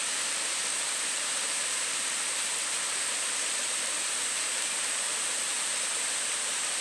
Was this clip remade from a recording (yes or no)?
yes